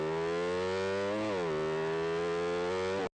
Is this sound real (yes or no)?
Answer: yes